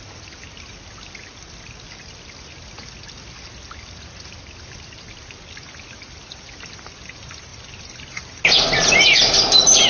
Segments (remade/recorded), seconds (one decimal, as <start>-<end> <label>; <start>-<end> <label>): 0.0-9.9 recorded